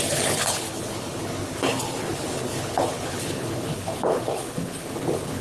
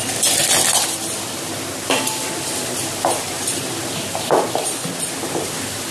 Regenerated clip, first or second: first